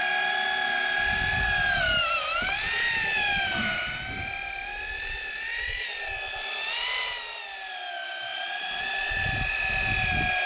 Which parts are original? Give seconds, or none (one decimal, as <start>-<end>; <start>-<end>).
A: 0.0-8.3; 9.1-10.5